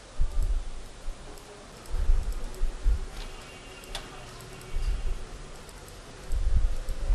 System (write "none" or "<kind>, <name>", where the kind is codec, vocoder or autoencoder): none